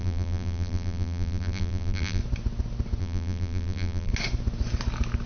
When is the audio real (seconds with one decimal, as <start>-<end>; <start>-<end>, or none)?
2.2-3.0; 4.1-5.3